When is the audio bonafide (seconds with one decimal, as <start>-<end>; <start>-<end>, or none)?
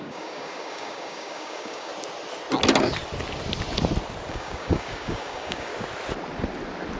1.9-4.3; 5.7-7.0